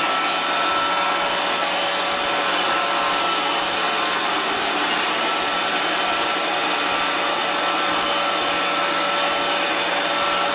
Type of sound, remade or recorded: recorded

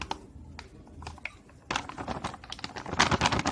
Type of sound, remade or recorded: recorded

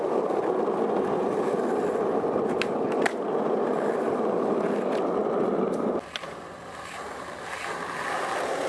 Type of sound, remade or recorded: recorded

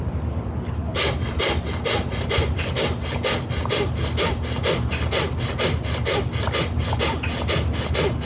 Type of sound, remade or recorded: recorded